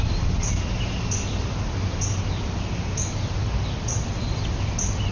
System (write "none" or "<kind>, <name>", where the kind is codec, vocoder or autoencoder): none